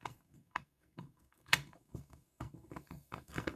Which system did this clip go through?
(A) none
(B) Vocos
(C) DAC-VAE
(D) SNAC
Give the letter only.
D